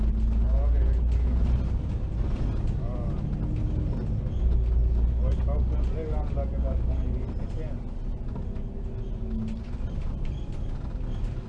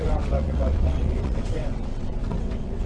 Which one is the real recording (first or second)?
first